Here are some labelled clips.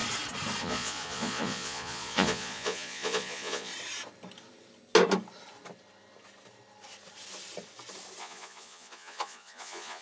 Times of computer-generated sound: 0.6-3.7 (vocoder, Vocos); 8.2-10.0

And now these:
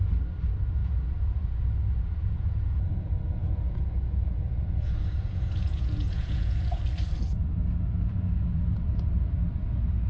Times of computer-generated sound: 0.8-3.0 (vocoder, Vocos); 3.4-6.8